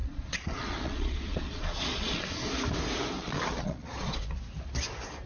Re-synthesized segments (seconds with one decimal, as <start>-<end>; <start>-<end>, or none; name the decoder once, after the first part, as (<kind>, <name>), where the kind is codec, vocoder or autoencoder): 0.0-2.5 (vocoder, Vocos); 3.2-4.3